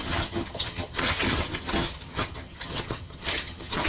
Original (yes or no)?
no